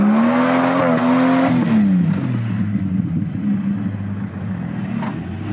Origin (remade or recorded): recorded